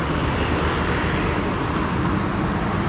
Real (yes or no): yes